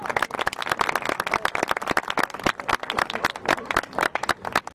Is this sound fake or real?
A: real